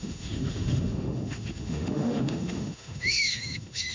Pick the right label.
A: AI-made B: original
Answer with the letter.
A